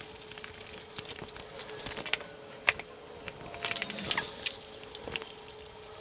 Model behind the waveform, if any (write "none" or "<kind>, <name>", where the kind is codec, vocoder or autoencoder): none